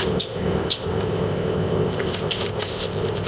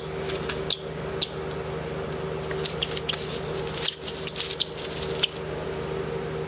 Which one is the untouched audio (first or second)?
second